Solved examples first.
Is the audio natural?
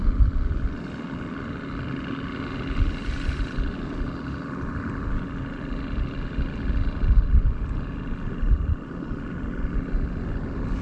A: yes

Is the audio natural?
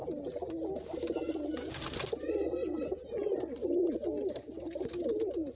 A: yes